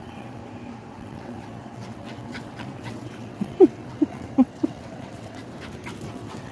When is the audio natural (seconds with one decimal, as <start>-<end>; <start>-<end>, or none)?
0.4-0.9; 5.4-6.1